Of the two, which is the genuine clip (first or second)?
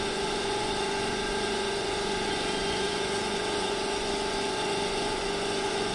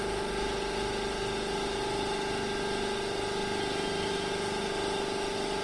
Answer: second